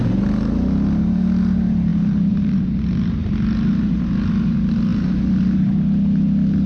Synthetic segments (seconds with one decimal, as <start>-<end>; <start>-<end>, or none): 1.9-2.6